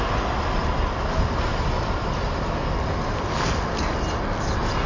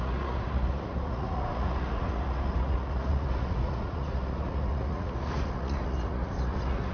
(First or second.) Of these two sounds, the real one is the first